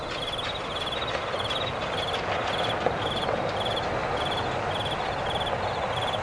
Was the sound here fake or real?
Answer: real